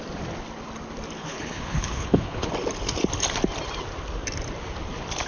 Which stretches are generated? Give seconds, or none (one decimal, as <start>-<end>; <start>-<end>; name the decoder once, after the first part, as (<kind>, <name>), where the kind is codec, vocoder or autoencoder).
1.2-2.5 (codec, HILCodec)